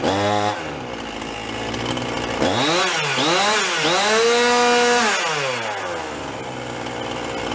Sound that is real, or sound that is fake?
real